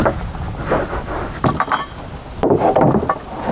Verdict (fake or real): real